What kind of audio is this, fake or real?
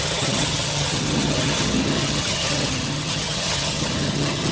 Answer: fake